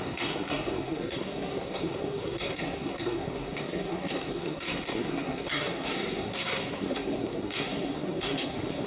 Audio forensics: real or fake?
fake